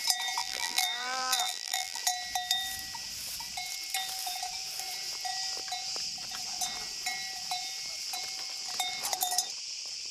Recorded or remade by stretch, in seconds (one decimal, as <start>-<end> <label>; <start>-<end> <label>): 0.0-0.4 recorded; 0.4-2.0 remade; 2.0-10.1 recorded

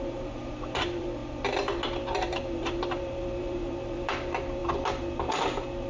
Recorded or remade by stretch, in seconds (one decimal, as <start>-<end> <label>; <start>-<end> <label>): 0.0-1.2 remade; 1.2-2.3 recorded; 2.3-4.6 remade; 4.6-5.9 recorded

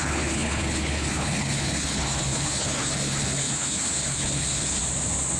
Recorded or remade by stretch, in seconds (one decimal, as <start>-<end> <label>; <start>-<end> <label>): 0.0-4.8 remade; 4.8-5.4 recorded

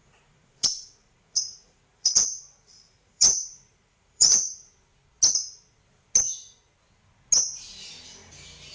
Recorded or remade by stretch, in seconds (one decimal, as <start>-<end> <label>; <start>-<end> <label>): 0.0-4.5 remade; 4.5-8.7 recorded

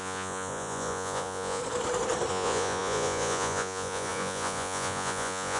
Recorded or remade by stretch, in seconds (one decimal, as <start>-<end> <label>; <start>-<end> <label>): 0.0-1.6 remade; 1.6-2.3 recorded; 2.3-5.6 remade

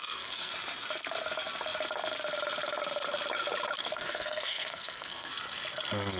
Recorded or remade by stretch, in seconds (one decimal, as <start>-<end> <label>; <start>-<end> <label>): 0.0-0.5 remade; 0.5-3.8 recorded; 3.8-5.3 remade; 5.3-6.2 recorded